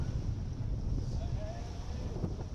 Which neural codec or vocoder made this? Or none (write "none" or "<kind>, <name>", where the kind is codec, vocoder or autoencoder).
none